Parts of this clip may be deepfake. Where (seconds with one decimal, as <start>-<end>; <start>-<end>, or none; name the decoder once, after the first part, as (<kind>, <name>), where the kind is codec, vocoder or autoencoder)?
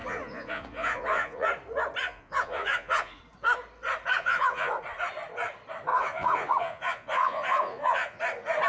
0.0-1.5 (vocoder, Vocos); 2.0-3.2; 4.1-4.7; 5.9-8.2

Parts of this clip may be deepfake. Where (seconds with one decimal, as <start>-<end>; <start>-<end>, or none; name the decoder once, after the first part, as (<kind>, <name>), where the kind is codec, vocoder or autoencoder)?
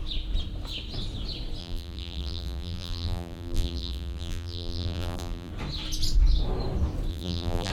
1.6-5.5 (vocoder, BigVGAN v2); 7.1-7.7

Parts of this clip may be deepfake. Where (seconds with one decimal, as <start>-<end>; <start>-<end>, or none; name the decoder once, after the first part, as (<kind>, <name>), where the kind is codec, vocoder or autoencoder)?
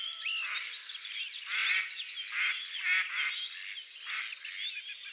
none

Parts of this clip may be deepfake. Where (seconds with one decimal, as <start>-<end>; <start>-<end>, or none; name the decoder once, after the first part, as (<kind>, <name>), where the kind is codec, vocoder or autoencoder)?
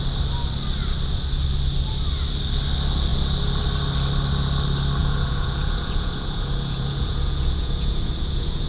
5.0-8.7 (vocoder, Vocos)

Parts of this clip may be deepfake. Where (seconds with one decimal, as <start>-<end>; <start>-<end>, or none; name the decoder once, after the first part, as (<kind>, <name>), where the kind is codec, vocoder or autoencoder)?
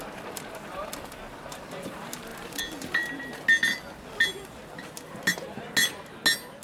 none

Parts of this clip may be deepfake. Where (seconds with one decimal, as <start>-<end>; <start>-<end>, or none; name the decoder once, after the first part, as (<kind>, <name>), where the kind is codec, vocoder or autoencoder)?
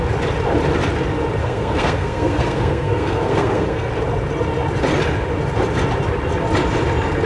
1.4-3.9 (codec, SNAC)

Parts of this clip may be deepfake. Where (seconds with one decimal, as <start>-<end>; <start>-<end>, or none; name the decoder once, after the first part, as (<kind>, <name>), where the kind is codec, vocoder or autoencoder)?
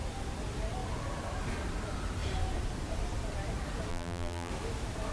3.9-4.5 (vocoder, BigVGAN v2)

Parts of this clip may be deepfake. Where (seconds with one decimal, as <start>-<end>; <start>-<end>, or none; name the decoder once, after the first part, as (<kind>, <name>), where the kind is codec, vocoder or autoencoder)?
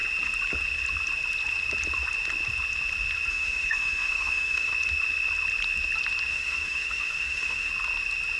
3.3-4.7 (autoencoder, DAC-VAE); 6.3-7.7